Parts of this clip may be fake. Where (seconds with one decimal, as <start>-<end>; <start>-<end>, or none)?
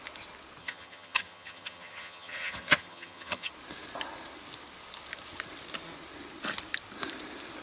0.6-3.5